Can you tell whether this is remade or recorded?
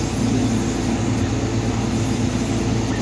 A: recorded